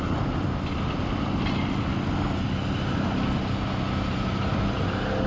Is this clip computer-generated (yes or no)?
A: no